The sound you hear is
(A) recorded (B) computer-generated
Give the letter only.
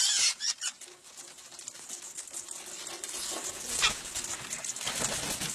A